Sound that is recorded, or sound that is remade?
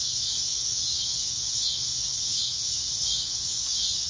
remade